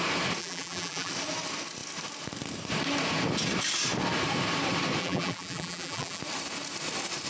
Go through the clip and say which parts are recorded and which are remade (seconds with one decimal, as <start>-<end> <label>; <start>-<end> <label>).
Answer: 0.0-0.4 recorded; 0.4-1.1 remade; 1.1-5.0 recorded; 5.0-6.2 remade; 6.2-7.3 recorded